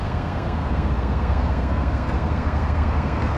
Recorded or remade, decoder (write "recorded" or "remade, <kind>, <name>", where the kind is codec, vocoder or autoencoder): remade, codec, SNAC